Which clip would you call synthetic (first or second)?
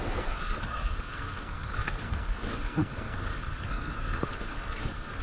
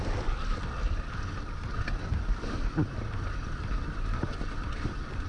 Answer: first